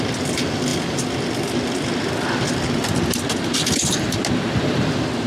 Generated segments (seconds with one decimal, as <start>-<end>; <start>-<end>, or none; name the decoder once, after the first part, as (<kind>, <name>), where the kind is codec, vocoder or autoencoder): none